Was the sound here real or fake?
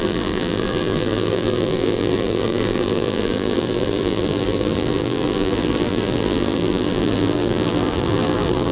fake